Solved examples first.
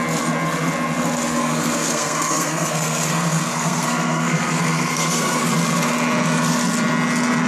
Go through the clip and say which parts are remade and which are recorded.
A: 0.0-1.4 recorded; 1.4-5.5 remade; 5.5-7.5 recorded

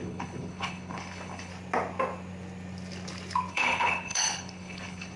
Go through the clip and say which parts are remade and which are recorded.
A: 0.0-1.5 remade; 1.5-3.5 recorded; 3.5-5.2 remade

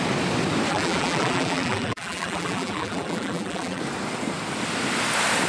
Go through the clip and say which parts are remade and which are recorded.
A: 0.0-0.7 recorded; 0.7-3.8 remade; 3.8-5.5 recorded

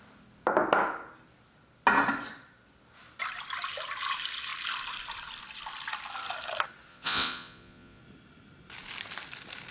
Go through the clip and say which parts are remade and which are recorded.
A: 0.0-6.9 recorded; 6.9-8.0 remade; 8.0-9.7 recorded

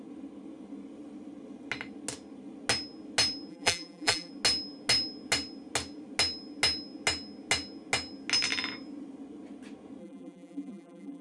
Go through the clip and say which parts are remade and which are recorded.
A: 0.0-3.5 recorded; 3.5-4.3 remade; 4.3-10.0 recorded; 10.0-11.2 remade

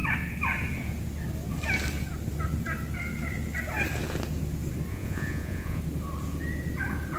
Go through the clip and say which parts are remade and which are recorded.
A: 0.0-4.9 recorded; 4.9-5.8 remade; 5.8-7.2 recorded

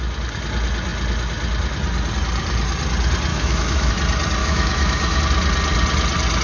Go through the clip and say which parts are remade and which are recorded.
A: 0.0-3.3 recorded; 3.3-3.9 remade; 3.9-4.4 recorded; 4.4-5.2 remade; 5.2-6.4 recorded